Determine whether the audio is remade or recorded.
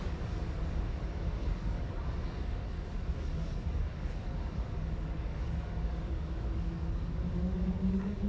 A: remade